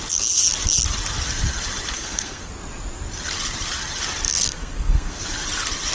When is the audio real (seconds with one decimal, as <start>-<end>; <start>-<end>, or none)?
0.0-1.9; 2.5-4.3; 5.2-5.9